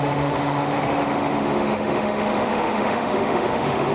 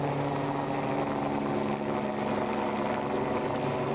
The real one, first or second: second